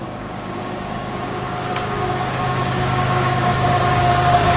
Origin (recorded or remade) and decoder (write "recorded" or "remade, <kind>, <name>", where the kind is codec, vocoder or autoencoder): remade, codec, DAC